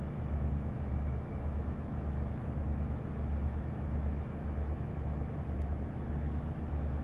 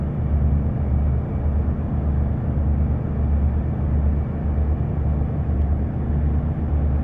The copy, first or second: first